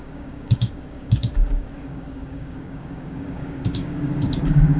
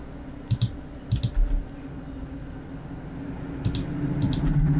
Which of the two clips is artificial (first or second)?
first